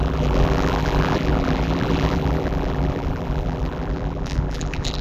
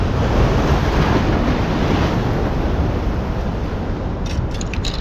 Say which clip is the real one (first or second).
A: second